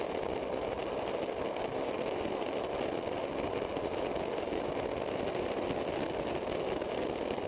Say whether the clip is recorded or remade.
recorded